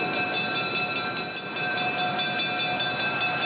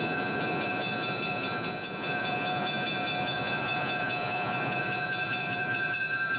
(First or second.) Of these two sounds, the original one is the first